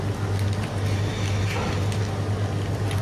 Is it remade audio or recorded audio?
recorded